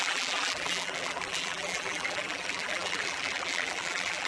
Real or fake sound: fake